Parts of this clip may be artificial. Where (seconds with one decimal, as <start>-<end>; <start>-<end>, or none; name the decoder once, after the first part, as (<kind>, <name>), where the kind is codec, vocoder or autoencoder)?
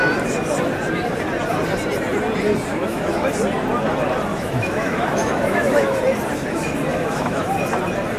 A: 2.7-3.3 (autoencoder, DAC-VAE); 4.3-6.0; 6.9-7.5